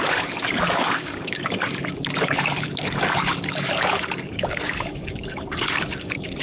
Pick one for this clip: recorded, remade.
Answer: remade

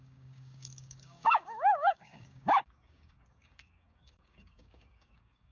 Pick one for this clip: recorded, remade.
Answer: remade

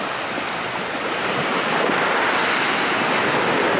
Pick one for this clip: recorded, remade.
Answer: recorded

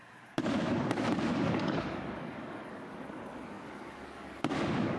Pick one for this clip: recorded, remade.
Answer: remade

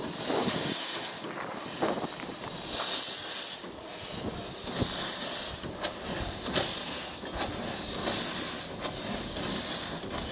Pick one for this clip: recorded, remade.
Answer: recorded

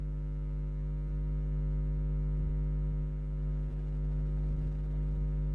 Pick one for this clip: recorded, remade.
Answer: recorded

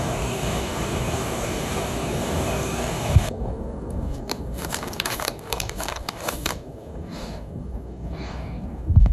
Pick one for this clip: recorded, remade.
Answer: remade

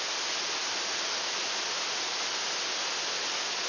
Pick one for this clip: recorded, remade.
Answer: recorded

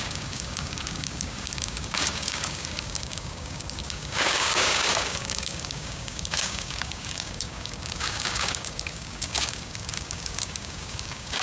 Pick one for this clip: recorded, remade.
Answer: remade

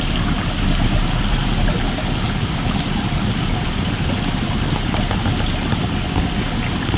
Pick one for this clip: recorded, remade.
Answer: recorded